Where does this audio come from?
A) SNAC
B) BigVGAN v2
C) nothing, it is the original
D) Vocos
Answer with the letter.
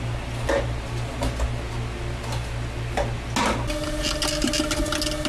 C